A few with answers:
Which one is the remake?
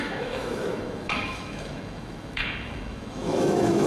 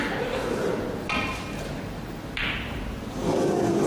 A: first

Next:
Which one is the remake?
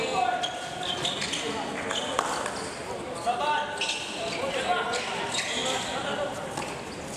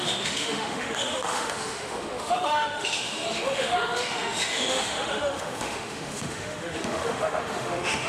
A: second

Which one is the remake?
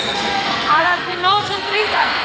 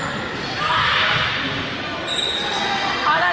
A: first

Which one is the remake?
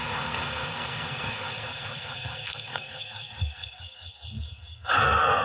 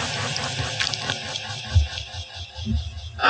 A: first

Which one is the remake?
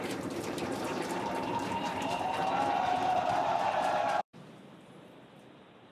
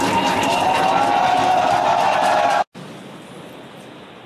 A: first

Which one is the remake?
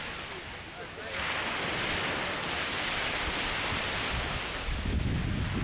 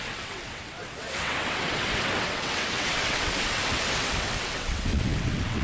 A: second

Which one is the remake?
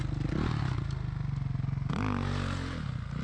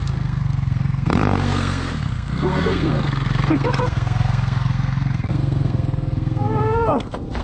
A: second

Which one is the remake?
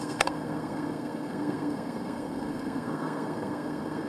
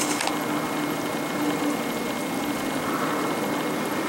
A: first